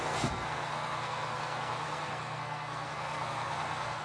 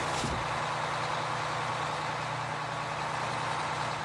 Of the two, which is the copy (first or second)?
first